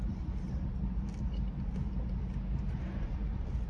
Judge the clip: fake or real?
real